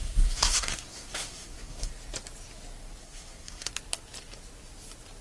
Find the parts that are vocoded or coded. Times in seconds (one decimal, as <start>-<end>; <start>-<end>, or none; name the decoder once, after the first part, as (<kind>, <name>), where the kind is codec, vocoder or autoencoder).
0.0-1.9 (codec, SNAC); 3.0-3.7